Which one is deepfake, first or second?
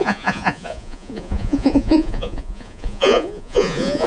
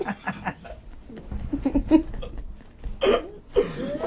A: first